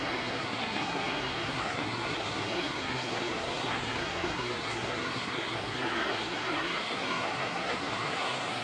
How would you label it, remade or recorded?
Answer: remade